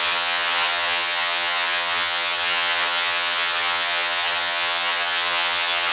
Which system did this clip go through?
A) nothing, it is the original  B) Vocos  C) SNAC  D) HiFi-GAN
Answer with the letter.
D